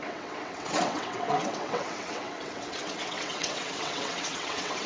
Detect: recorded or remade remade